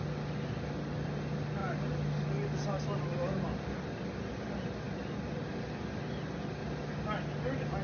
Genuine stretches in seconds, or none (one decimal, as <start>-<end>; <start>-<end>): 0.0-7.8

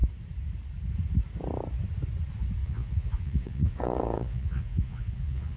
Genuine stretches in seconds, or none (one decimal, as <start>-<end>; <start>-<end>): 0.0-2.6

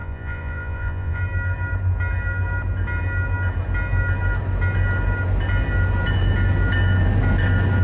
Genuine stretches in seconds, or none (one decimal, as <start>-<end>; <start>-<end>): 1.2-7.8

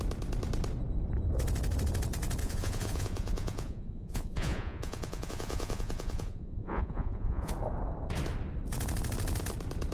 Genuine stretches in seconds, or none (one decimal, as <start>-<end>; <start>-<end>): 0.0-2.4; 7.5-9.9

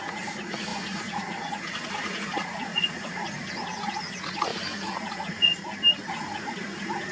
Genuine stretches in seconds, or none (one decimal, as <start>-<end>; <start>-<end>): 4.5-5.1; 5.6-6.1